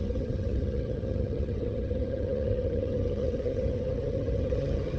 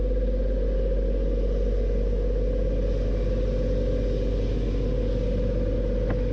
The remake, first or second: first